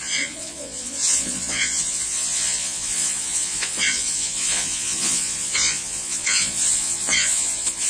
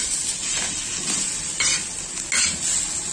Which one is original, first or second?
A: second